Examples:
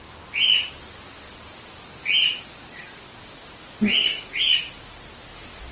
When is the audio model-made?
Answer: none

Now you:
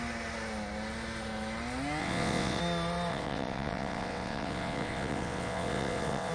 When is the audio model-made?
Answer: 2.0-2.6 (vocoder, WaveNeXt); 3.1-6.3

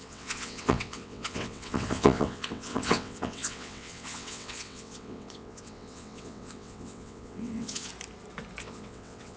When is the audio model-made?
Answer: 0.0-7.9 (vocoder, WaveNeXt); 8.6-9.4

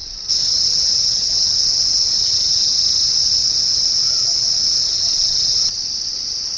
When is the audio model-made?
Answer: 0.0-2.7 (vocoder, WaveNeXt); 3.4-6.6

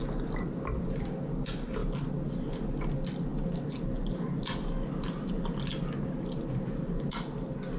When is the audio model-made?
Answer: none

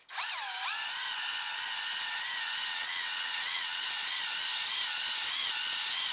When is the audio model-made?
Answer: 2.7-3.9 (vocoder, WaveNeXt)